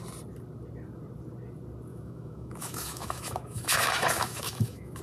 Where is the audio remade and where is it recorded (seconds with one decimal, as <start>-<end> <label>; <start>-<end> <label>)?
0.0-1.9 recorded; 1.9-5.0 remade